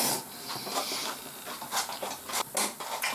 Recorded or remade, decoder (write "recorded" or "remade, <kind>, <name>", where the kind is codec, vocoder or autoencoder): recorded